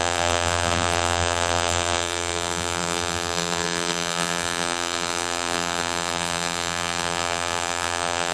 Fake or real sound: fake